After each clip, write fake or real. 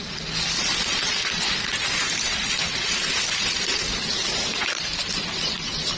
real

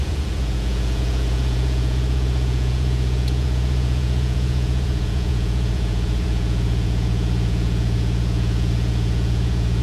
fake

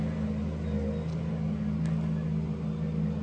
real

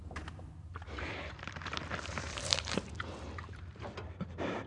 fake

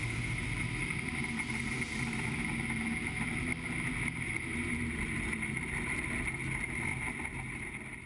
real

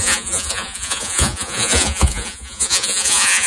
fake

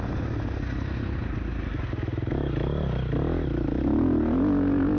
real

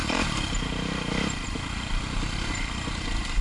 fake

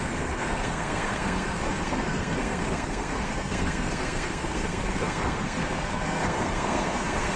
fake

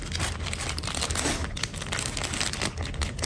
real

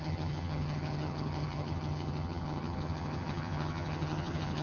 fake